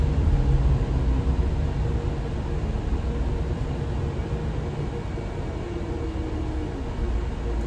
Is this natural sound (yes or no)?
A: yes